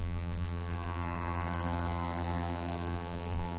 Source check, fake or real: fake